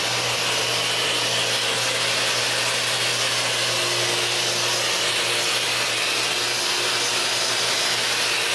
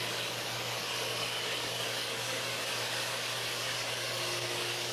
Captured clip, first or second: first